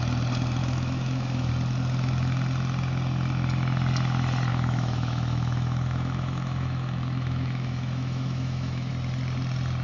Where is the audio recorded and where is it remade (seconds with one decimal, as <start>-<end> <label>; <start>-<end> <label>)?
0.0-0.6 recorded; 0.6-1.5 remade; 1.5-4.5 recorded; 4.5-8.9 remade; 8.9-9.8 recorded

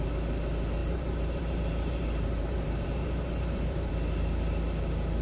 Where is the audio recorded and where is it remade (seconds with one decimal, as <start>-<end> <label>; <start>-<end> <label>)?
0.0-0.8 recorded; 0.8-3.9 remade; 3.9-5.2 recorded

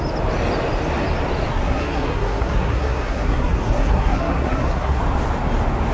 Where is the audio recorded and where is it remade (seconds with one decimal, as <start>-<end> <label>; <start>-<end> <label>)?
0.0-1.5 recorded; 1.5-5.0 remade; 5.0-5.9 recorded

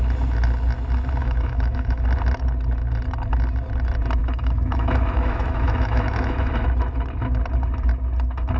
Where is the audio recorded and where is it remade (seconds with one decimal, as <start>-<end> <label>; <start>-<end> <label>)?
0.0-1.2 recorded; 1.2-2.0 remade; 2.0-4.2 recorded; 4.2-6.5 remade; 6.5-8.6 recorded

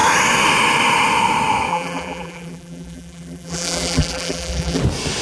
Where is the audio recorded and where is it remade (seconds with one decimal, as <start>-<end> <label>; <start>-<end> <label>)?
0.0-1.7 recorded; 1.7-4.8 remade; 4.8-5.2 recorded

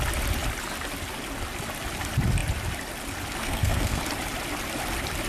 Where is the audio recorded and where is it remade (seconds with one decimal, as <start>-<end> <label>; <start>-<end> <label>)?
0.0-3.4 recorded; 3.4-4.0 remade; 4.0-5.3 recorded

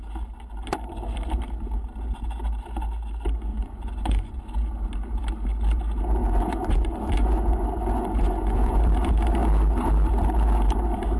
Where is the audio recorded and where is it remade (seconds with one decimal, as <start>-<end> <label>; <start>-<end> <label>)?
0.0-3.5 recorded; 3.5-4.3 remade; 4.3-6.2 recorded; 6.2-8.8 remade; 8.8-11.2 recorded